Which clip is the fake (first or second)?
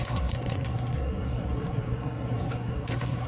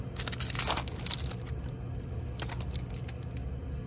first